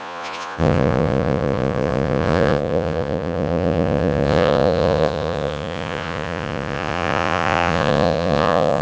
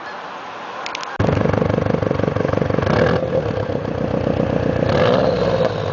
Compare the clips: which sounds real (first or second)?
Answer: second